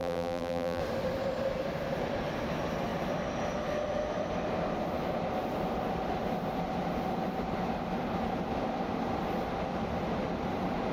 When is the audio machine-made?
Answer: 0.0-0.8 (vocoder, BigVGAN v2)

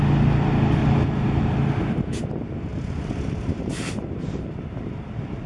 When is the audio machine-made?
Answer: 0.8-1.5 (vocoder, BigVGAN v2); 2.7-4.5

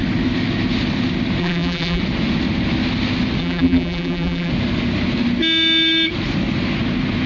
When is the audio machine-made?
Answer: 1.4-2.0 (vocoder, BigVGAN v2); 3.4-4.5

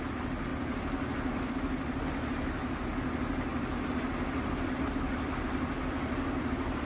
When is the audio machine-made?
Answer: 0.5-1.5 (vocoder, BigVGAN v2); 3.5-6.9

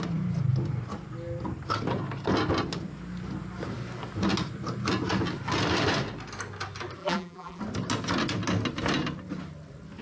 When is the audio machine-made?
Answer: 7.0-7.6 (vocoder, BigVGAN v2)

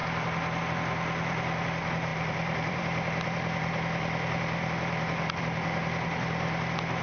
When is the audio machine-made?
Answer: 2.1-5.4 (vocoder, BigVGAN v2)